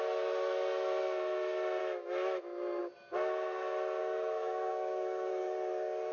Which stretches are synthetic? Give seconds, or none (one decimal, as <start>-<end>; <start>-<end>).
1.8-2.8; 4.0-5.3